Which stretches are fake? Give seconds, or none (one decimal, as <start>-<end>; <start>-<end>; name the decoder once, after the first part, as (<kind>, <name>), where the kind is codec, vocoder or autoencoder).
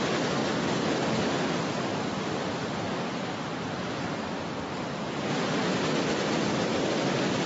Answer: 1.9-2.5 (vocoder, BigVGAN v2); 3.5-4.1